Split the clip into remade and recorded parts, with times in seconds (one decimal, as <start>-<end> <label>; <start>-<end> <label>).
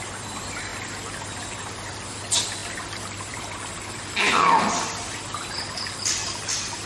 0.0-6.9 recorded